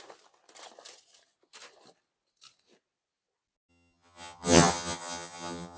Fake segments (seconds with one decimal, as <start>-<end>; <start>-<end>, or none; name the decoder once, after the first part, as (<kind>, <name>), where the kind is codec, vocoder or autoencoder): 3.7-5.8 (vocoder, HiFi-GAN)